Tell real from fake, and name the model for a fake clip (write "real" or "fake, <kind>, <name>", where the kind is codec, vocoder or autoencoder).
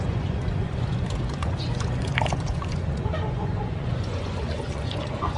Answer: fake, vocoder, Vocos